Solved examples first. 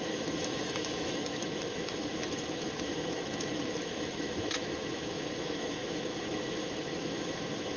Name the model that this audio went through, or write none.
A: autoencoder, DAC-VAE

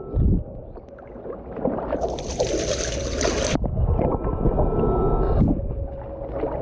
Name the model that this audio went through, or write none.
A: none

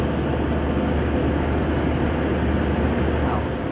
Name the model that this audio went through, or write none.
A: none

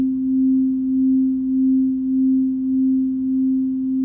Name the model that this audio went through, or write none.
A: none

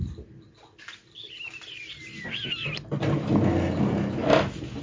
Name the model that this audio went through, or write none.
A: none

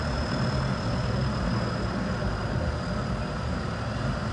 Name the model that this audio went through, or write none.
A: none